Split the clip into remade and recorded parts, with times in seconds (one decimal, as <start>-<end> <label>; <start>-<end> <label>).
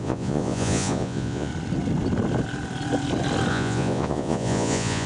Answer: 0.0-1.5 remade; 1.5-3.5 recorded; 3.5-5.1 remade